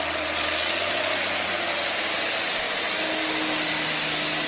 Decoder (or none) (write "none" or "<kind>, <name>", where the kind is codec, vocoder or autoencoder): none